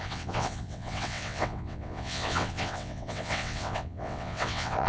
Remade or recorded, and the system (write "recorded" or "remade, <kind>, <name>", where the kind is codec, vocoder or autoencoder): remade, vocoder, WaveNeXt